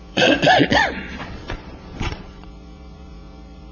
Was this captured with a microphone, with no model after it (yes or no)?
no